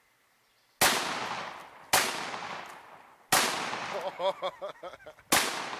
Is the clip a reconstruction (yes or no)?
no